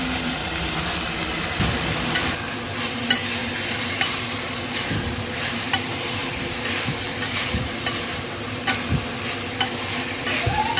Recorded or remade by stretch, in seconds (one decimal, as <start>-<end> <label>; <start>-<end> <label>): 0.0-3.4 recorded; 3.4-8.6 remade; 8.6-10.8 recorded